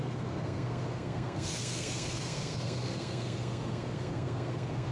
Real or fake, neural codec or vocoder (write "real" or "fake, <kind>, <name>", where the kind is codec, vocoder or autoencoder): fake, codec, SNAC